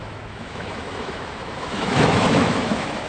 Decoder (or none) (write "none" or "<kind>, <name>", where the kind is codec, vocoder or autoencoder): autoencoder, DAC-VAE